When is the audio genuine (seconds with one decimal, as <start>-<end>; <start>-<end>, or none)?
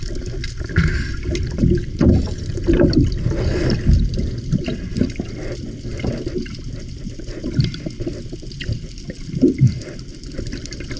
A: 0.0-11.0